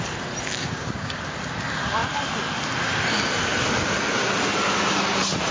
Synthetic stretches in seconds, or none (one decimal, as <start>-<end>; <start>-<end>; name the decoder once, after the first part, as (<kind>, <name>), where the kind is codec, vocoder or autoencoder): 0.6-1.2 (codec, DAC)